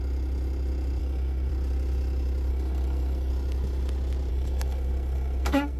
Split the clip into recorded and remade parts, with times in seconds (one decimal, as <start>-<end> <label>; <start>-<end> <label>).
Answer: 0.0-1.0 recorded; 1.0-1.5 remade; 1.5-2.5 recorded; 2.5-3.3 remade; 3.3-4.3 recorded; 4.3-5.8 remade